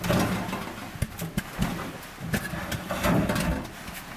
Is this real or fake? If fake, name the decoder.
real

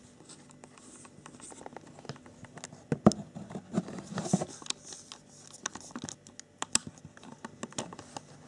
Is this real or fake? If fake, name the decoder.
real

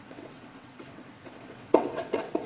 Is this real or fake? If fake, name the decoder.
fake, vocoder, WaveNeXt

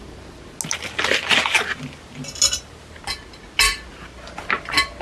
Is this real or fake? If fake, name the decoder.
real